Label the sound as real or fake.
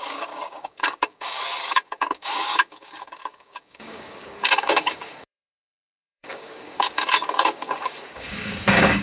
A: fake